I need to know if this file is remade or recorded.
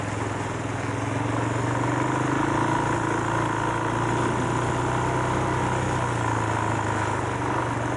recorded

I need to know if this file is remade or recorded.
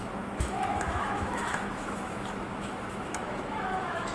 remade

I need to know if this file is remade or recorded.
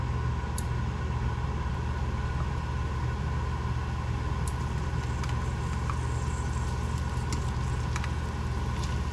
recorded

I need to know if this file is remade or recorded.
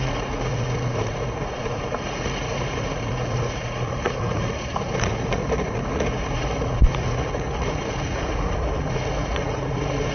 remade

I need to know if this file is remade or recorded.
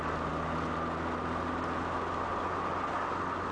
recorded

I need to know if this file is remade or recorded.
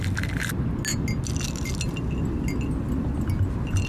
recorded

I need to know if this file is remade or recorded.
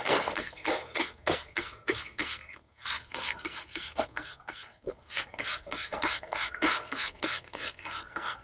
remade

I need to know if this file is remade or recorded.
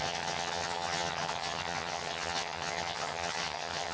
remade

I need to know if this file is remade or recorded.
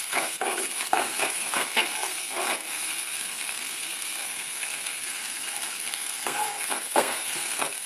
remade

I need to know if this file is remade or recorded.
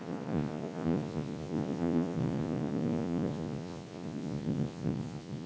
remade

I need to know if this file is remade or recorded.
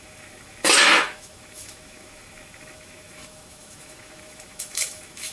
remade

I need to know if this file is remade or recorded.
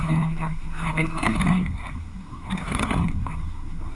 remade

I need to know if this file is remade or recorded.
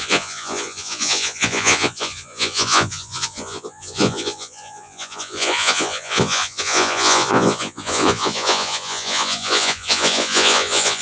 remade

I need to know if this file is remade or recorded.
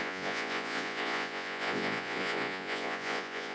remade